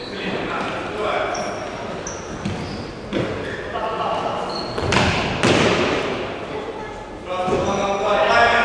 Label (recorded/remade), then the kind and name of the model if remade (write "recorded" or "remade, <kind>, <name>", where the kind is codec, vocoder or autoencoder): recorded